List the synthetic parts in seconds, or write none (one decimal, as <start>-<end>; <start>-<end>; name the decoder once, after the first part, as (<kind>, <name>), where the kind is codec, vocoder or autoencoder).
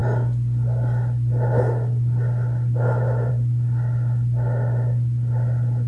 none